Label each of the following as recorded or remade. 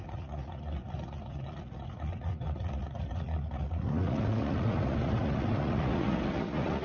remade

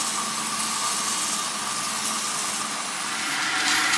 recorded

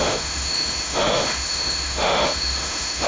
remade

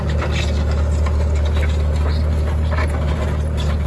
recorded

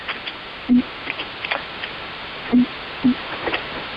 recorded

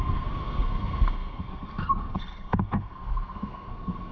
remade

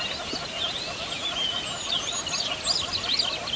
recorded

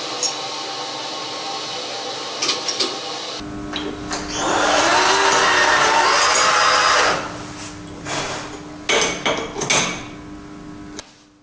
recorded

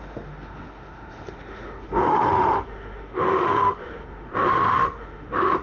remade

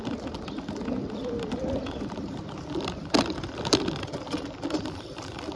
recorded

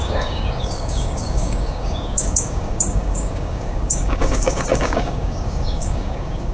remade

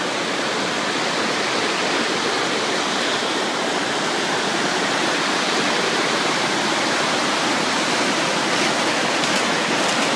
recorded